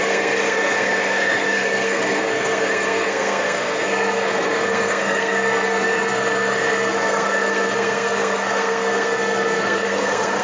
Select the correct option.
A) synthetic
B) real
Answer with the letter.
A